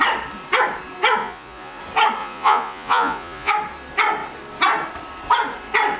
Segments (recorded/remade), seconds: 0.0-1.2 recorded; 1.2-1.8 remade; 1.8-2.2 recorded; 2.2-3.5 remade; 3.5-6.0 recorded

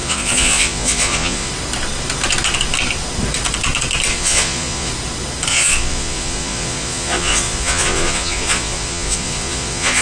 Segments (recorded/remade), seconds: 0.0-1.5 remade; 1.5-4.1 recorded; 4.1-4.9 remade; 4.9-5.5 recorded; 5.5-10.0 remade

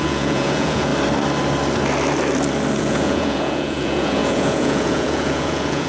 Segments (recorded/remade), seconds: 0.0-0.9 remade; 0.9-2.8 recorded; 2.8-5.9 remade

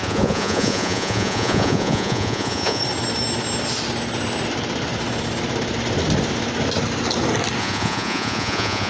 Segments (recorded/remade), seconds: 0.0-2.8 remade; 2.8-7.6 recorded; 7.6-8.9 remade